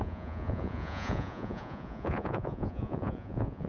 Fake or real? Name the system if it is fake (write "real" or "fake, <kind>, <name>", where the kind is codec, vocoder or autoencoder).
fake, vocoder, Vocos